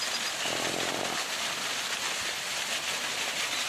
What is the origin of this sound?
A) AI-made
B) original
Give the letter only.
B